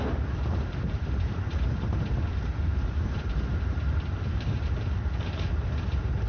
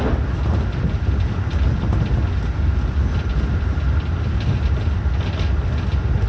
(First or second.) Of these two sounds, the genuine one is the second